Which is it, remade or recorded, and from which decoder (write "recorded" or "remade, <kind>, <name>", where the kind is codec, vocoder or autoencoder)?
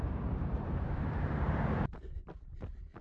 remade, vocoder, BigVGAN v2